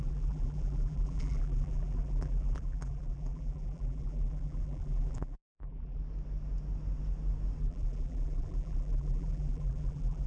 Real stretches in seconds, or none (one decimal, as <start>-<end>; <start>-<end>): 6.0-7.6